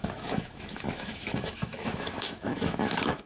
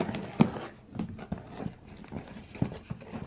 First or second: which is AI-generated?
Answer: first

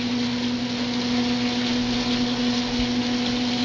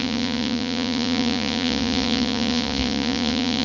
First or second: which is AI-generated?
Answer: second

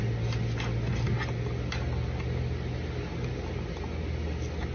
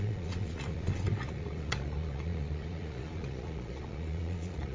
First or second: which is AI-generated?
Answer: second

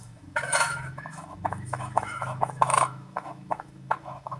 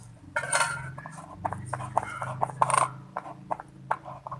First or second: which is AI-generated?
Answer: first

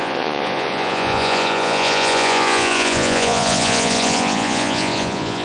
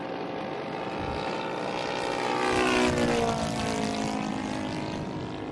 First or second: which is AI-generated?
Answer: first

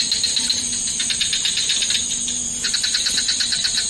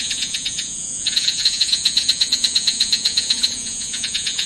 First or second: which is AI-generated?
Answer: second